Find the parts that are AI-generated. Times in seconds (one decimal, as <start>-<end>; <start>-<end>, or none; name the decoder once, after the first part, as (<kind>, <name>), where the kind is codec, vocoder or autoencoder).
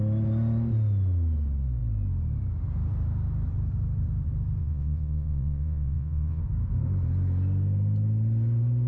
4.6-6.4 (vocoder, Vocos)